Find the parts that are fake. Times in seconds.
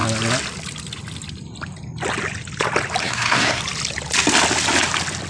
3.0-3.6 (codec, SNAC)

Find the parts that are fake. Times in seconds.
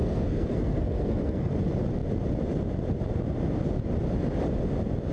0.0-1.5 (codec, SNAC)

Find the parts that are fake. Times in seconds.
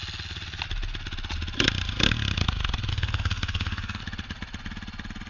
2.9-4.0 (codec, SNAC)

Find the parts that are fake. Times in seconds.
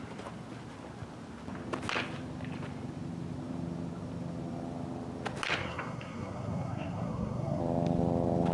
5.6-7.6 (codec, SNAC)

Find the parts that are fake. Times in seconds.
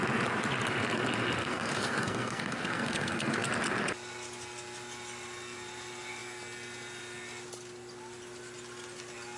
1.4-3.5 (codec, SNAC)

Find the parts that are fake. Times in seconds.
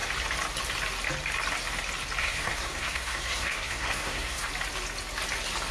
2.2-4.5 (codec, SNAC)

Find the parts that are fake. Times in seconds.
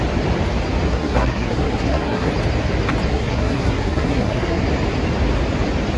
0.9-2.3 (codec, SNAC); 3.1-4.6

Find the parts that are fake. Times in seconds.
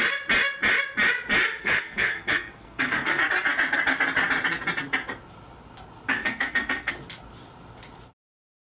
1.6-3.2 (codec, SNAC); 6.2-6.9